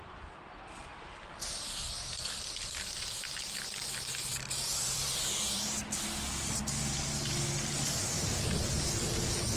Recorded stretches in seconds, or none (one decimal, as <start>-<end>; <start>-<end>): 0.0-4.3; 5.6-9.6